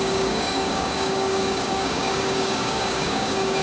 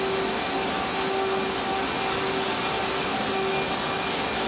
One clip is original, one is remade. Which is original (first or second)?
second